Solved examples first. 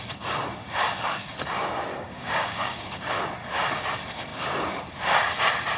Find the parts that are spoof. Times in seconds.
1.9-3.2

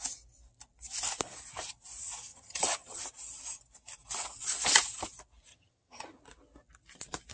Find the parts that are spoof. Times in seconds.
2.3-3.0; 5.5-6.2

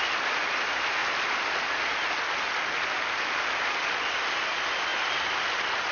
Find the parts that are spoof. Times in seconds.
none

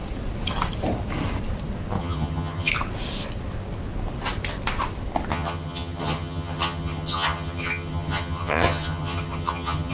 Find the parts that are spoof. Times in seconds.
2.0-2.7; 5.3-9.9

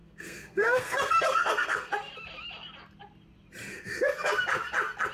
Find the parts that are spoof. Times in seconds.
0.0-1.9; 3.7-4.4

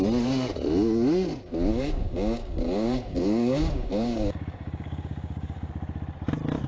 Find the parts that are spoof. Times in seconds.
1.7-5.7

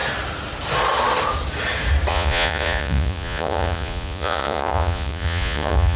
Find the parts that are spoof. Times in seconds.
2.1-6.0

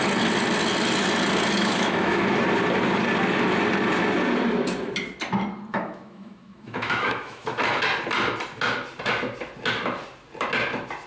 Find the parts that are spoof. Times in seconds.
1.6-2.2; 5.7-7.7